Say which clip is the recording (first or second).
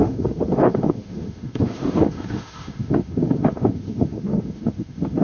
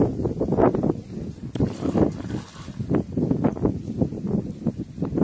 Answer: second